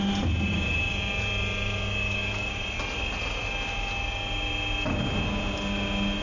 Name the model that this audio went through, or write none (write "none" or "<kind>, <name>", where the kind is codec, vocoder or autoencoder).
none